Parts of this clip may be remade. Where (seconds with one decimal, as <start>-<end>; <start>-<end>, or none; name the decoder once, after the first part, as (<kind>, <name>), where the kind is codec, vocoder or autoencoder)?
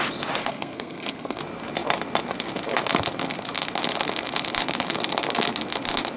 0.4-1.4 (codec, SNAC)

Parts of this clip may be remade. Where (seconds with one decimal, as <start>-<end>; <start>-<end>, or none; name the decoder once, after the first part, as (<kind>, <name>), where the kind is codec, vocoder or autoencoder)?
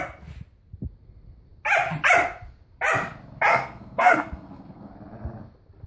3.5-4.9 (codec, SNAC)